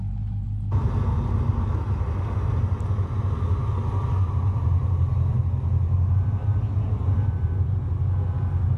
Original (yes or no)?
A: yes